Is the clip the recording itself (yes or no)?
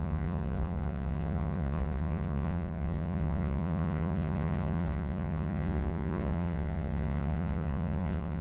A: no